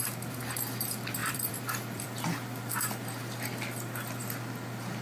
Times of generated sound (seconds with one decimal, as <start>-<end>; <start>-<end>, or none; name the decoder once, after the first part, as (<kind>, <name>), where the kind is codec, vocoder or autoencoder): 1.2-4.2 (vocoder, BigVGAN v2)